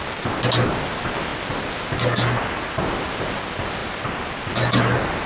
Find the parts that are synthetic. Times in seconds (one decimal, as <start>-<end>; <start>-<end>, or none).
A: none